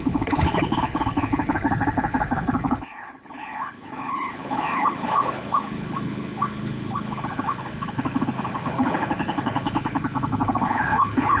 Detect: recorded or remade remade